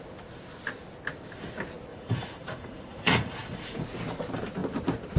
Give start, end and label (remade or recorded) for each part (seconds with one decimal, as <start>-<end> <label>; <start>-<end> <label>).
0.0-1.9 recorded; 1.9-3.8 remade; 3.8-5.2 recorded